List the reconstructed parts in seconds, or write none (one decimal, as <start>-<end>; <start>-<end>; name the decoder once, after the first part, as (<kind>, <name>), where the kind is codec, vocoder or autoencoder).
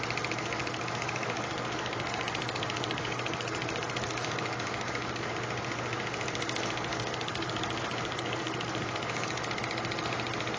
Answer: 0.6-5.3 (codec, DAC); 6.9-9.6